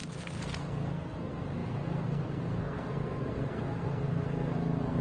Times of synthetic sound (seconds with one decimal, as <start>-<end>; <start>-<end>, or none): 0.0-5.0